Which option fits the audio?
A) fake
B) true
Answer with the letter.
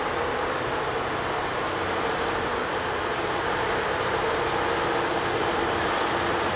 B